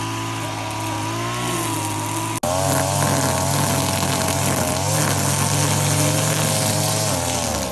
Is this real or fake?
real